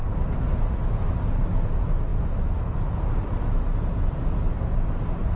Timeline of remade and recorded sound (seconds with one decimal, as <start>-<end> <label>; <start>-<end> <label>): 0.0-5.4 recorded